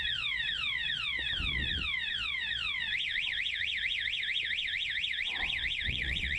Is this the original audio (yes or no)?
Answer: no